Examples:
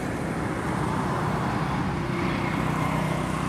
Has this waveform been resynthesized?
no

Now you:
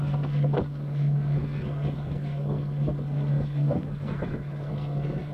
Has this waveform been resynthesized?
yes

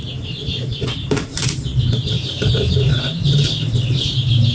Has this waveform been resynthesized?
yes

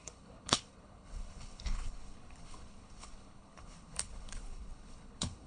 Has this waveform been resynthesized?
yes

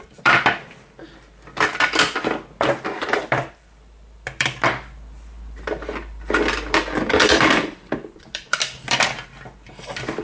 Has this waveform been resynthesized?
yes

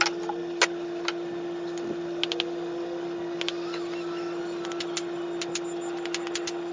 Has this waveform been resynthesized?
no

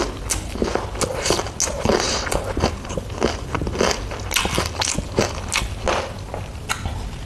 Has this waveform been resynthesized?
no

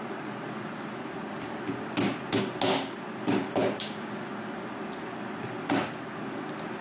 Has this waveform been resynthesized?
no